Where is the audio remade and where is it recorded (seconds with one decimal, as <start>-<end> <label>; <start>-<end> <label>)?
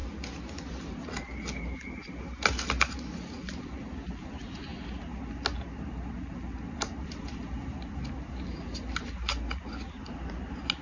0.0-10.8 recorded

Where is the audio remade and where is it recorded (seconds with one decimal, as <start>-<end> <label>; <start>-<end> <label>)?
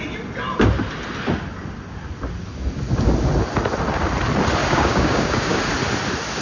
0.0-4.6 recorded; 4.6-5.6 remade; 5.6-6.4 recorded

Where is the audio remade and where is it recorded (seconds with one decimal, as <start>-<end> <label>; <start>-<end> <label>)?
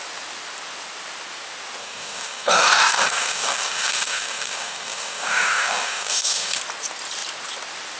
0.0-1.8 recorded; 1.8-6.6 remade; 6.6-8.0 recorded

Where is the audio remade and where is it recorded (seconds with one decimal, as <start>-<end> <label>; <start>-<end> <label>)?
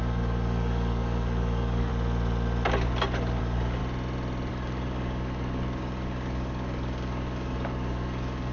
0.0-1.9 remade; 1.9-3.4 recorded; 3.4-3.8 remade; 3.8-4.5 recorded; 4.5-8.5 remade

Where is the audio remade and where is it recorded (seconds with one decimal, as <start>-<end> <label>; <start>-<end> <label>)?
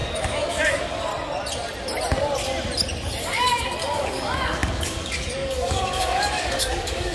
0.0-1.1 remade; 1.1-3.2 recorded; 3.2-7.1 remade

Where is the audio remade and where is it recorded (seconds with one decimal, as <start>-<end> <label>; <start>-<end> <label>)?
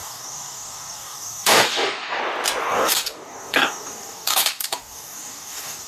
0.0-2.2 remade; 2.2-2.6 recorded; 2.6-5.9 remade